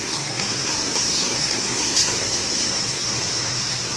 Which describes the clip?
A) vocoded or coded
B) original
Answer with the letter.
A